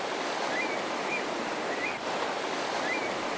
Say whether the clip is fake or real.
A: real